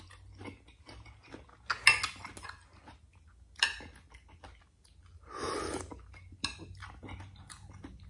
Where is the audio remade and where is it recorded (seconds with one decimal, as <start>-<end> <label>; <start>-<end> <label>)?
0.0-8.1 recorded